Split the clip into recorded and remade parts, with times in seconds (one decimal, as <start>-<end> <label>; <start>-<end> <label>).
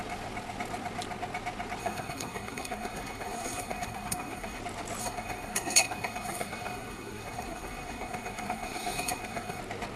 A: 0.0-1.8 recorded; 1.8-4.6 remade; 4.6-5.0 recorded; 5.0-9.6 remade; 9.6-10.0 recorded